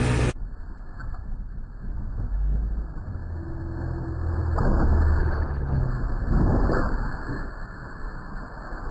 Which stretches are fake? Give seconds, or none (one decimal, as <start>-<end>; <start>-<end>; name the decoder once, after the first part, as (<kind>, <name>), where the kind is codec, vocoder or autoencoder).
5.2-5.8 (codec, HILCodec)